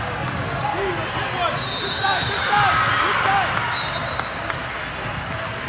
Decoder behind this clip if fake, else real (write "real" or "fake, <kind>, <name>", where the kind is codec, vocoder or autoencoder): real